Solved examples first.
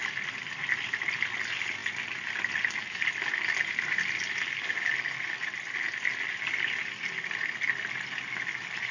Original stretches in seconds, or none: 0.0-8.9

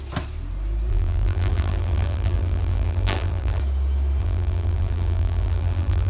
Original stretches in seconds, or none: 0.0-0.9; 3.6-4.2

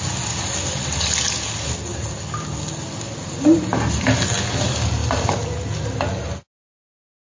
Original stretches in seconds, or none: 0.0-7.3

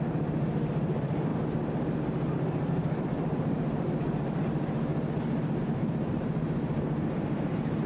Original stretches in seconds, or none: 1.3-2.7; 4.9-5.6